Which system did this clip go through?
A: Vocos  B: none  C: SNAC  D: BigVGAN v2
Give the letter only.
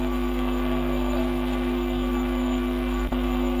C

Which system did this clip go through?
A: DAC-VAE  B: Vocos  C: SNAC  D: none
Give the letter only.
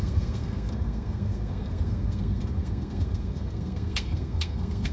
C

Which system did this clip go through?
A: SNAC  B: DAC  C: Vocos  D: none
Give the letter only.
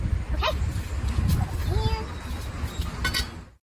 D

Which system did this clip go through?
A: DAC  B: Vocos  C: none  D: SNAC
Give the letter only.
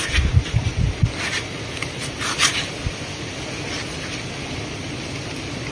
C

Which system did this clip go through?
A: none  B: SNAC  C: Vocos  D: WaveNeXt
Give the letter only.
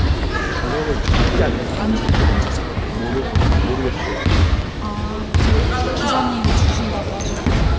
A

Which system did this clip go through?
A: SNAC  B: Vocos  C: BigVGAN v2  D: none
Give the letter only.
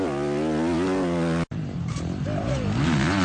D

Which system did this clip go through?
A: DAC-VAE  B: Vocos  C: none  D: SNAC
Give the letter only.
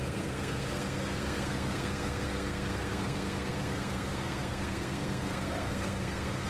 D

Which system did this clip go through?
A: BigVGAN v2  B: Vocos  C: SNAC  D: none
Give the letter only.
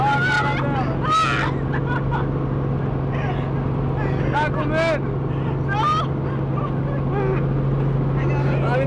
D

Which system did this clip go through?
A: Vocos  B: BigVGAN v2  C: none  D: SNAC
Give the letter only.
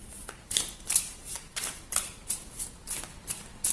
C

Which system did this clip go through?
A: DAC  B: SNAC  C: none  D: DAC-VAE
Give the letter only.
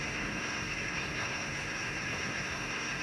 B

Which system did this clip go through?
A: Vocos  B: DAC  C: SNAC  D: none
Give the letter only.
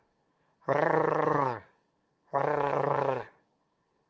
C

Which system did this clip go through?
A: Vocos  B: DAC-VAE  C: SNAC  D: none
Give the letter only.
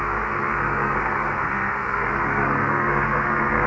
C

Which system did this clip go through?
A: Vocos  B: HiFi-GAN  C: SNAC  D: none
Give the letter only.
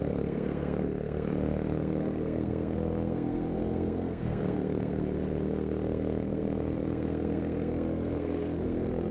C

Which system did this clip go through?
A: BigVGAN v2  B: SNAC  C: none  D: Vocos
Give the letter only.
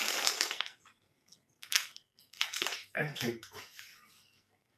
B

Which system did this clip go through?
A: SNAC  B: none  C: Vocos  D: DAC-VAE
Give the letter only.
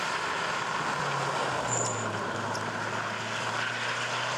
B